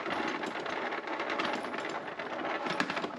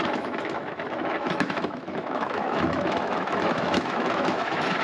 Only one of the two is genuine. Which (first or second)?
first